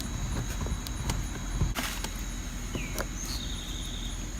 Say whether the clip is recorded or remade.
recorded